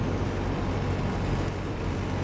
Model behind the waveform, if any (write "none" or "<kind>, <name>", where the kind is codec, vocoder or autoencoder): none